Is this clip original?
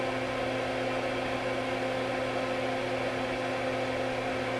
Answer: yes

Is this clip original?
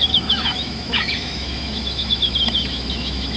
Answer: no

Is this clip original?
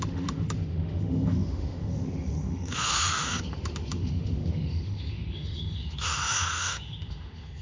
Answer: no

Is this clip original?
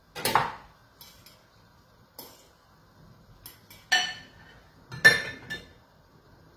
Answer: yes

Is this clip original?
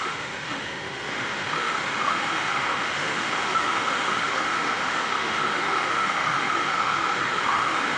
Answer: no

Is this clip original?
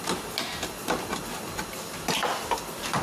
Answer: yes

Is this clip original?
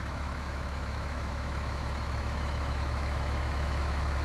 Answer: no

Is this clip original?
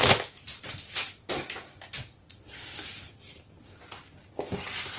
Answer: yes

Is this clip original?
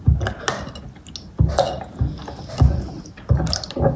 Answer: yes